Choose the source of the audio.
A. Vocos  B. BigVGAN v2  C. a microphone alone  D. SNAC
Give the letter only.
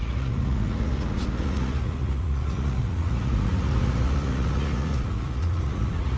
A